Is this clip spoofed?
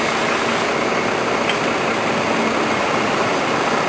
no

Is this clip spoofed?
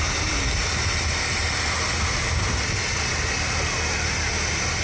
no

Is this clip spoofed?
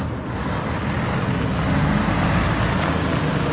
no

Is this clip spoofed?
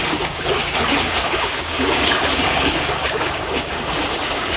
yes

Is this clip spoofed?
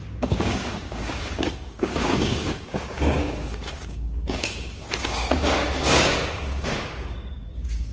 yes